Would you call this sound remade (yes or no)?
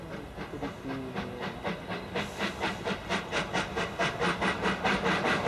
no